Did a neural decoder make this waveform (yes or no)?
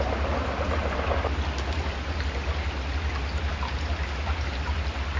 no